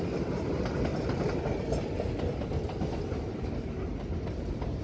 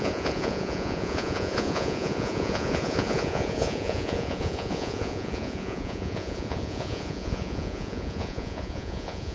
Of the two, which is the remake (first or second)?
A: second